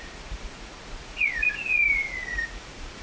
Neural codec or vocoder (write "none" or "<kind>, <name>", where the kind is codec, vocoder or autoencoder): vocoder, Vocos